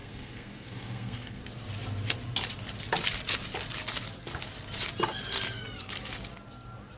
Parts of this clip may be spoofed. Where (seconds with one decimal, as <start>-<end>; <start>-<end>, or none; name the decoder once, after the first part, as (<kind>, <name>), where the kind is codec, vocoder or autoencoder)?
0.0-1.4 (codec, SNAC)